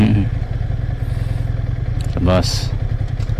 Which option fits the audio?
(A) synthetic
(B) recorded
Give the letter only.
B